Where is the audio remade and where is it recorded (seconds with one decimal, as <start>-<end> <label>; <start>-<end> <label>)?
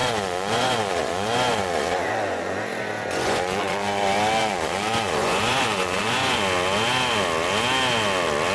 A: 0.0-4.0 remade; 4.0-4.4 recorded; 4.4-6.4 remade; 6.4-8.5 recorded